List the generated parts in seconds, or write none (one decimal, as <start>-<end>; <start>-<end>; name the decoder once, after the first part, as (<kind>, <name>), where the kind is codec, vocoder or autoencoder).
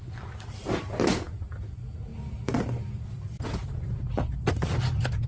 none